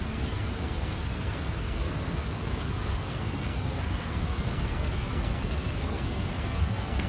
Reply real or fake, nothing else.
fake